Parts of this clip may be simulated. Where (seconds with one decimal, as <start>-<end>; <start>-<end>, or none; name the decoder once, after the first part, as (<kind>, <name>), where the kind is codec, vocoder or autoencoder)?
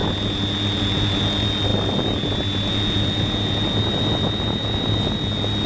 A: none